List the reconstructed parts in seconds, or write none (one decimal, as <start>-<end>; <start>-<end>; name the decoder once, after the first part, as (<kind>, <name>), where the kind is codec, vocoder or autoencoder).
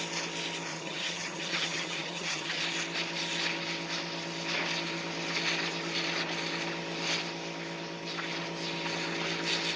0.7-2.6 (vocoder, HiFi-GAN)